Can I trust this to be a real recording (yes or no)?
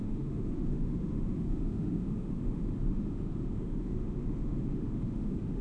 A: no